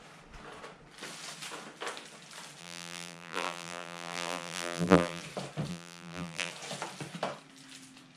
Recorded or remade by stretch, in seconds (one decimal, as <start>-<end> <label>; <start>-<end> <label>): 0.0-2.6 recorded; 2.6-5.2 remade; 5.2-5.7 recorded; 5.7-6.5 remade; 6.5-8.2 recorded